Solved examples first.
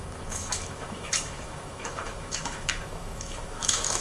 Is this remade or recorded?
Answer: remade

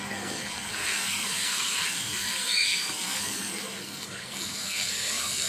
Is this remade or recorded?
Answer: remade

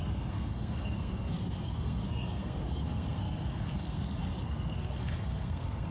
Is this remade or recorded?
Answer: remade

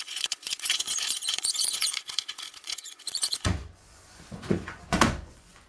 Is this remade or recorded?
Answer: remade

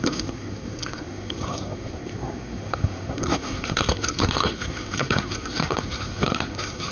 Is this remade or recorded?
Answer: remade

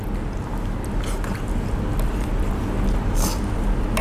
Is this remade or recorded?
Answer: recorded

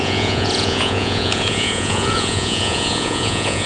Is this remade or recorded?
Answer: remade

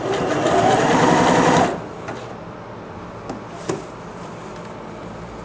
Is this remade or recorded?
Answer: recorded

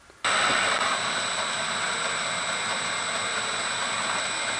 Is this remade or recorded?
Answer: recorded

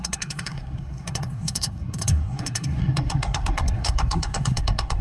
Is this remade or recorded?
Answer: remade